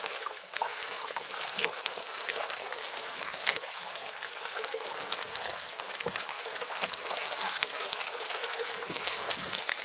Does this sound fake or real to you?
fake